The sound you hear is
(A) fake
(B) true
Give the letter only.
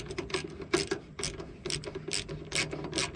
B